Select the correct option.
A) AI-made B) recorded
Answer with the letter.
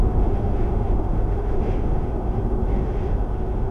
A